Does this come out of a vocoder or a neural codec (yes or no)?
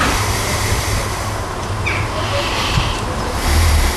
yes